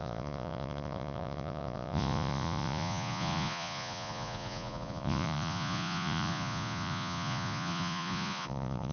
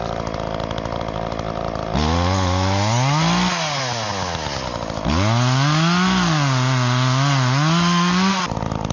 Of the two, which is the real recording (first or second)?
second